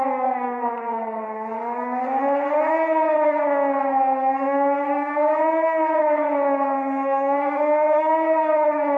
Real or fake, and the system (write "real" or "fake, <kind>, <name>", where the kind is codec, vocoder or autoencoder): fake, codec, SNAC